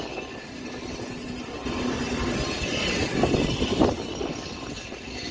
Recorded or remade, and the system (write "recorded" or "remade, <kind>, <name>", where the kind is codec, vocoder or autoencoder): recorded